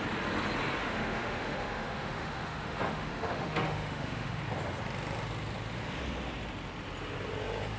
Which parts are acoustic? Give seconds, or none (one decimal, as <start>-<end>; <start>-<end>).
0.0-0.8; 4.4-7.8